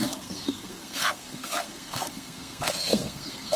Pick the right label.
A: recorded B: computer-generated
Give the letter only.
B